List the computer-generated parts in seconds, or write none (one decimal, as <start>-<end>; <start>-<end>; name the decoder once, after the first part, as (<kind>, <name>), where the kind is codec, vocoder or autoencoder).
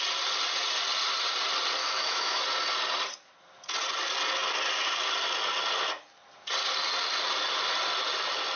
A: 1.8-2.4 (autoencoder, DAC-VAE)